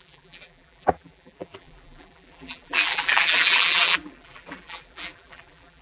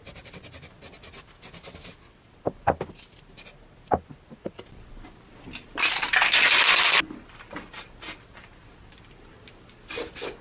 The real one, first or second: second